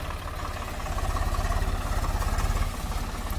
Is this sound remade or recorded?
recorded